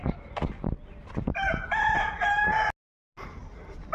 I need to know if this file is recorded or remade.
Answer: recorded